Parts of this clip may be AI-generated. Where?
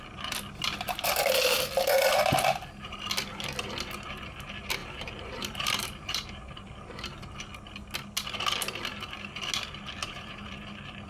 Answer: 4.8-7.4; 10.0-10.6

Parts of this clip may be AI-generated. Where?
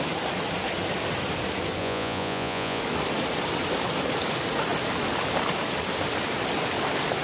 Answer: 1.8-2.8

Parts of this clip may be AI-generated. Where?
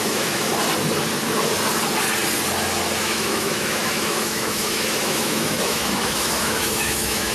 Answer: 0.0-0.5; 3.0-7.3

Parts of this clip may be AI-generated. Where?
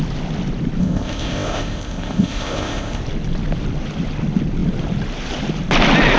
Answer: 0.8-3.0